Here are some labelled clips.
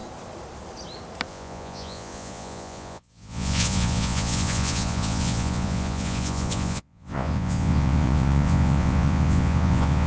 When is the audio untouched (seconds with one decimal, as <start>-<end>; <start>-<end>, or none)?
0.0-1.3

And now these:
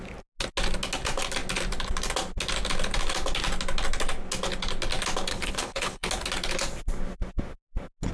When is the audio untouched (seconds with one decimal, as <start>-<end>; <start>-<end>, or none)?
0.0-5.3; 6.1-8.1

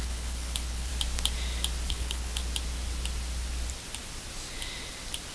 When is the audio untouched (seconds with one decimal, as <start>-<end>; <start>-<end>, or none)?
0.9-1.9; 2.4-5.3

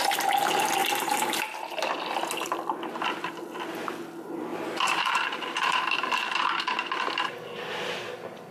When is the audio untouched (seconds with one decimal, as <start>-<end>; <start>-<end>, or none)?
0.0-0.8; 1.4-4.5; 6.4-8.5